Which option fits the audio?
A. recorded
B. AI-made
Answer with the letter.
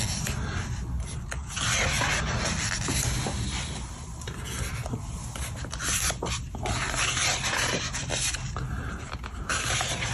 A